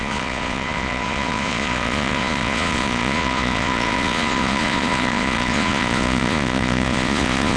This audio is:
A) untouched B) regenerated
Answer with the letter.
B